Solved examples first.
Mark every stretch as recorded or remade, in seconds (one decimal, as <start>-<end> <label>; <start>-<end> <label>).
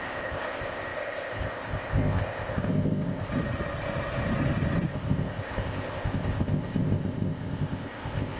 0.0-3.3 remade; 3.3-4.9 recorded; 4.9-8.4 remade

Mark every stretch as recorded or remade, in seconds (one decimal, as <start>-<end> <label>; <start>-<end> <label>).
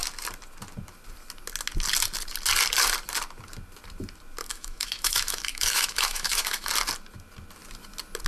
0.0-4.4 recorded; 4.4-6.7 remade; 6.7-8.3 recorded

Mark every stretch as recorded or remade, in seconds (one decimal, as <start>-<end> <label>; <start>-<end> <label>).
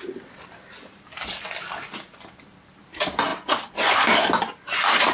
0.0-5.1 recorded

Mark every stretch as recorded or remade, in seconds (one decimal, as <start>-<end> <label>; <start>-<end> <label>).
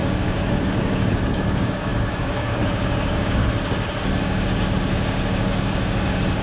0.0-3.4 remade; 3.4-4.2 recorded; 4.2-6.4 remade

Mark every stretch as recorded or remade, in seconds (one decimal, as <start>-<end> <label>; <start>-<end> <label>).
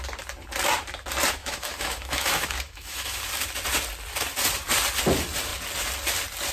0.0-1.4 recorded; 1.4-3.2 remade; 3.2-6.5 recorded